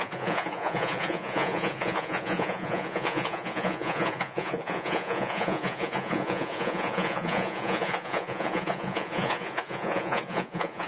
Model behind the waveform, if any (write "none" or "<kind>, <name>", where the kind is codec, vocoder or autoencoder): vocoder, Vocos